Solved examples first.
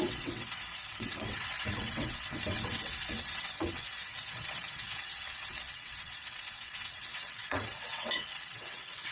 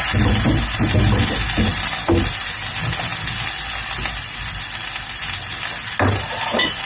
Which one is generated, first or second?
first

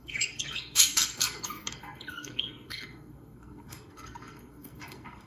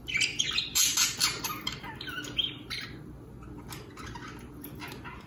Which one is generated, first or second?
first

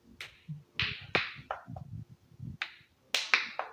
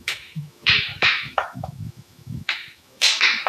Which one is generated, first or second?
second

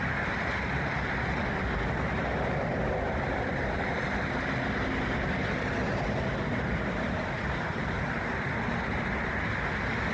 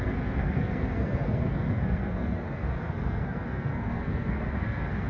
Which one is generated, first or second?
second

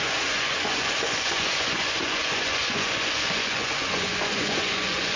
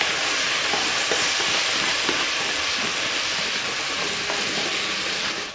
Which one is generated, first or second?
first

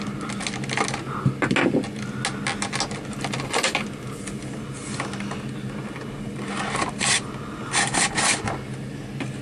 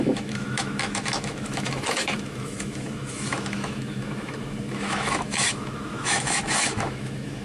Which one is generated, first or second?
second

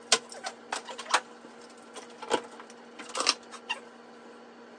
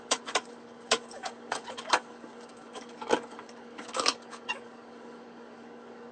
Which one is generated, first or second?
second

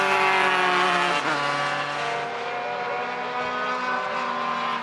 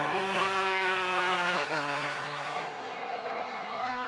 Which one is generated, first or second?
second